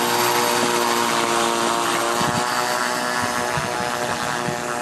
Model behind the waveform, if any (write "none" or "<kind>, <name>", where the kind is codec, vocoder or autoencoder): none